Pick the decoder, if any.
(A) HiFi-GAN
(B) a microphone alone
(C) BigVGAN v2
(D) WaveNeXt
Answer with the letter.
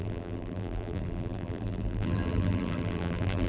C